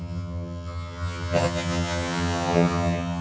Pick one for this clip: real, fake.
fake